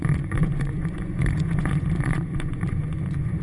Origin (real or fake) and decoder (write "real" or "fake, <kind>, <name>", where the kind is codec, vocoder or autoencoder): fake, vocoder, Vocos